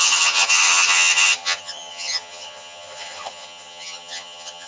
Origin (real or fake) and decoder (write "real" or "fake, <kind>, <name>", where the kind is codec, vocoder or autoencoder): fake, vocoder, HiFi-GAN